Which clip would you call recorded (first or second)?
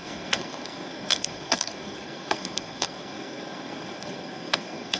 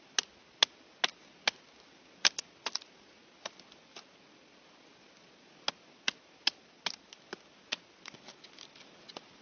second